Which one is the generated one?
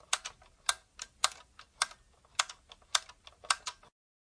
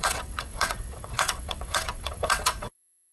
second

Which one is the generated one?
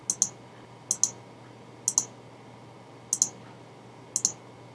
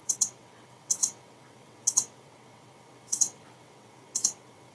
second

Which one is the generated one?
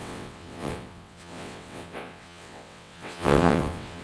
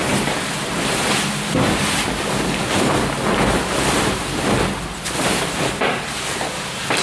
first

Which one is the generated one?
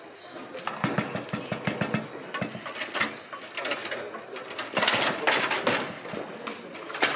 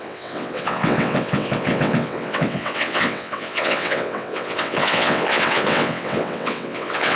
second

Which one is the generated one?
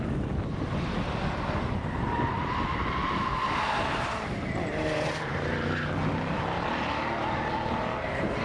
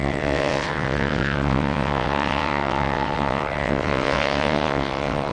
second